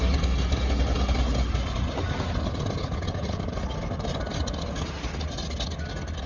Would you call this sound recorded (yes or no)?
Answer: yes